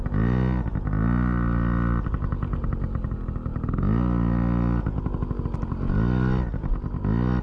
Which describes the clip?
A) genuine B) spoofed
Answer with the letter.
A